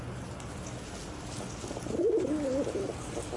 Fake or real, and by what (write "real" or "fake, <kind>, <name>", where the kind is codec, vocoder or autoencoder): real